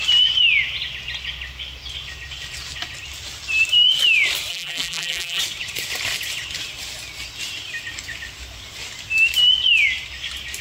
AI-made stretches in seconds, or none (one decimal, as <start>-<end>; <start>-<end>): 4.5-5.4